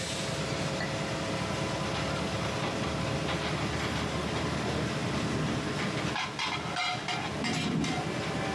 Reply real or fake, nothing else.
real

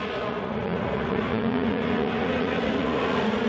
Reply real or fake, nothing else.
fake